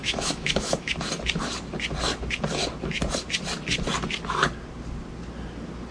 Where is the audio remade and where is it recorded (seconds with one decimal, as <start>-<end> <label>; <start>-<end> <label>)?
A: 0.0-0.9 remade; 0.9-5.9 recorded